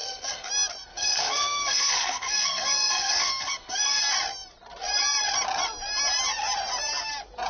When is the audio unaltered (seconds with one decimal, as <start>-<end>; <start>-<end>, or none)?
0.5-0.9; 4.0-7.5

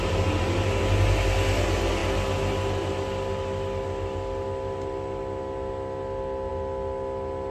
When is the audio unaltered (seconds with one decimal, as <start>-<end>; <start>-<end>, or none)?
0.0-7.5

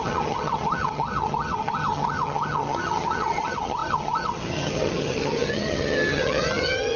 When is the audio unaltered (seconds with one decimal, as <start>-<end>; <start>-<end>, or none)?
none

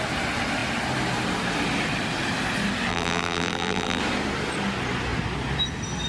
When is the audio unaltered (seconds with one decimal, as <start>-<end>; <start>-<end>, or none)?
0.0-2.9; 4.0-6.1

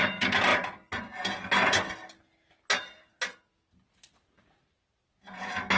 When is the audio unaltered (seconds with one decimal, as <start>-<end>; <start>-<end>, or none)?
0.0-5.8

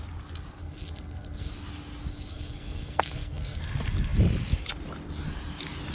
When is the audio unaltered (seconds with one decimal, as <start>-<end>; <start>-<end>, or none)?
0.0-0.6; 1.5-2.1; 3.6-5.9

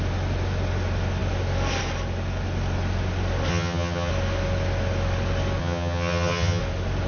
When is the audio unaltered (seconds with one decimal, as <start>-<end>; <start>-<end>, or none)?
0.0-3.5; 4.1-5.6; 6.6-7.1

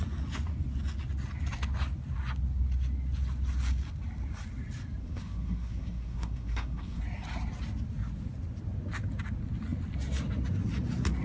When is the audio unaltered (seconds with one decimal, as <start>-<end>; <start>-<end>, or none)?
0.0-5.0; 7.0-11.2